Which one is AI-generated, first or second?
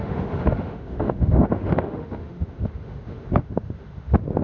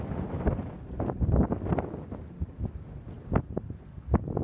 first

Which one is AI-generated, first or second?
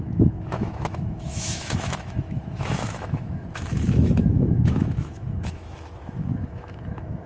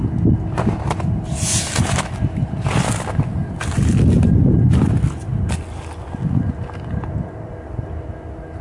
first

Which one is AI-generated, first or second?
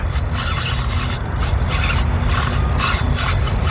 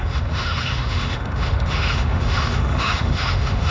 second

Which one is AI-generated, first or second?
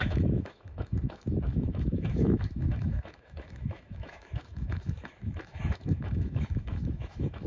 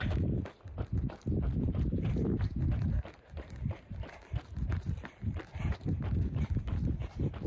first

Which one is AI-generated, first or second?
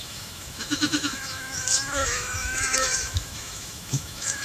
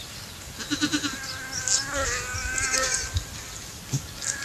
first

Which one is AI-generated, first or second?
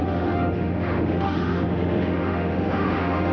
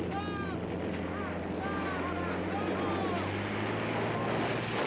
first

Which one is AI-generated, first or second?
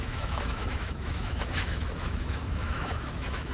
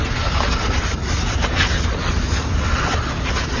first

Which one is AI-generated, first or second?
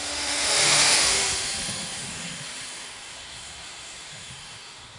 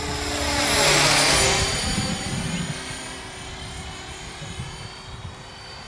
first